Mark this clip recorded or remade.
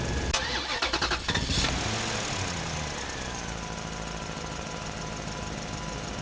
recorded